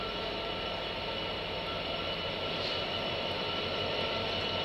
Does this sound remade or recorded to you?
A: recorded